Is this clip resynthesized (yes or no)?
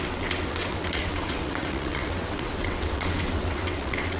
yes